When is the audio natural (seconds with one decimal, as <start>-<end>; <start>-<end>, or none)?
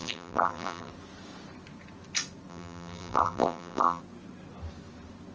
0.9-2.5; 4.0-5.3